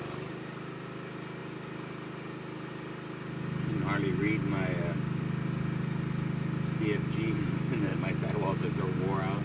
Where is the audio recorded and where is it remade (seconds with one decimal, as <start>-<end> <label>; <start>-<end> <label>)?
0.0-9.4 recorded